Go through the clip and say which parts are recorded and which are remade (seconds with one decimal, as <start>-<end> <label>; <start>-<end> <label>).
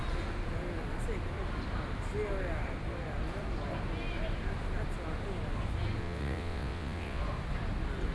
0.0-6.0 recorded; 6.0-7.2 remade; 7.2-8.1 recorded